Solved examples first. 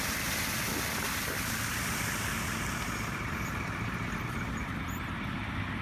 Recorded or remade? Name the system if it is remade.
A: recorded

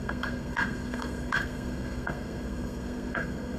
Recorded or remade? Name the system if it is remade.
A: remade, codec, SNAC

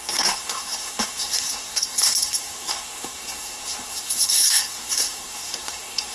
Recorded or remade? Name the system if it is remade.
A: remade, codec, SNAC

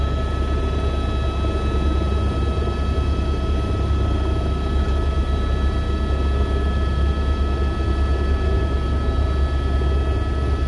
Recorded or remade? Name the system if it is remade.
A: recorded